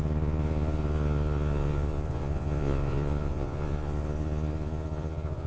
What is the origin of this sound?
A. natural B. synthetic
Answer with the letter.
B